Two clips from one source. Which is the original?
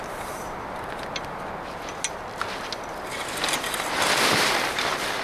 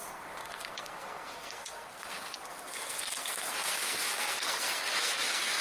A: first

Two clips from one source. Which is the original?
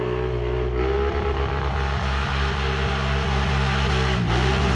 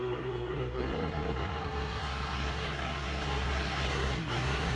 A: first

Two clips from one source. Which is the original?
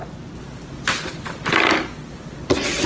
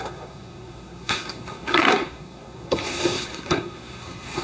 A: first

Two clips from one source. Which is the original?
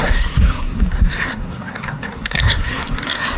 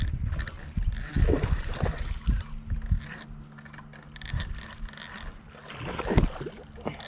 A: second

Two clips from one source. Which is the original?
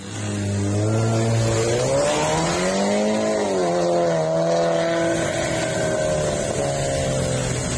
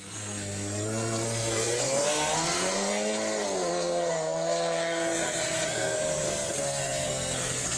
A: first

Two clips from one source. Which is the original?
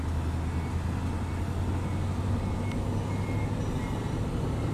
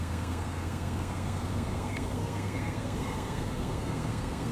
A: first